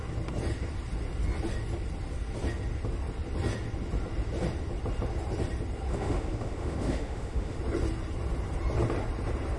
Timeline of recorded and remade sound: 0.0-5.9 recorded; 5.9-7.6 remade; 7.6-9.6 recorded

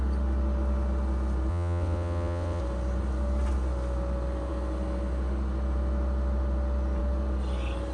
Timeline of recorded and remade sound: 0.0-1.5 recorded; 1.5-2.6 remade; 2.6-7.9 recorded

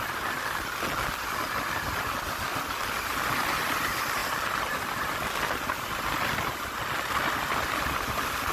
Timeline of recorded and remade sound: 0.0-8.5 recorded

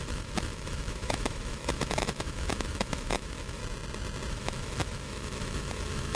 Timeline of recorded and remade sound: 0.0-3.6 remade; 3.6-4.3 recorded; 4.3-6.1 remade

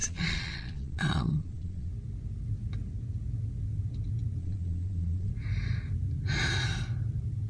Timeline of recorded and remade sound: 0.0-1.9 remade; 1.9-4.4 recorded; 4.4-5.3 remade; 5.3-7.5 recorded

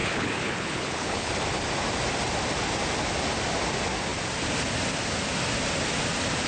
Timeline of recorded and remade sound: 0.0-1.3 remade; 1.3-6.5 recorded

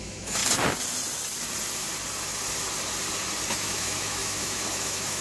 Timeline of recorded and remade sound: 0.0-0.4 remade; 0.4-3.5 recorded; 3.5-5.2 remade